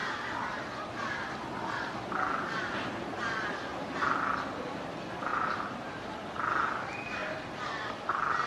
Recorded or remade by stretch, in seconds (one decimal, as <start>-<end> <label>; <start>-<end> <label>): 0.0-5.3 recorded; 5.3-6.0 remade; 6.0-8.5 recorded